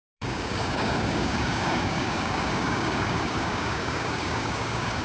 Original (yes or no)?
no